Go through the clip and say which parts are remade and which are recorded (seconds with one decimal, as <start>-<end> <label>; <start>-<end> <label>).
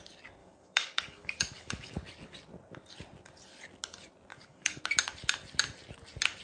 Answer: 0.0-0.4 recorded; 0.4-1.9 remade; 1.9-4.3 recorded; 4.3-4.8 remade; 4.8-6.4 recorded